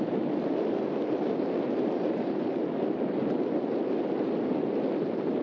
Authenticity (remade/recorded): recorded